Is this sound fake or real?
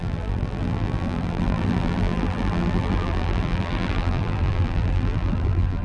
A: fake